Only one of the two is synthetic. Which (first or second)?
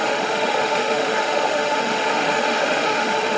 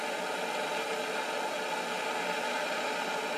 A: first